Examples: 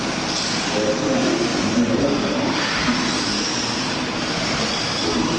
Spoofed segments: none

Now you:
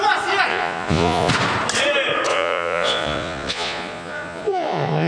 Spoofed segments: 0.5-1.3 (vocoder, Vocos); 2.3-5.1